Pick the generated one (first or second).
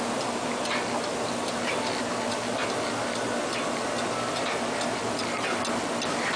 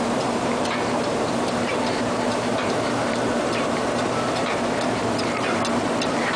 second